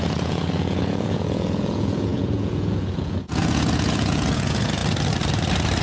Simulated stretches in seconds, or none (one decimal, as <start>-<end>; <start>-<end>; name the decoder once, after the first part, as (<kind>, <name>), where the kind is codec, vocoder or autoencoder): 0.0-4.8 (vocoder, Vocos)